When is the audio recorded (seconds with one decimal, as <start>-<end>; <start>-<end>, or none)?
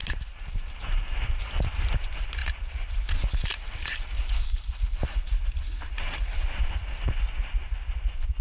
1.4-8.4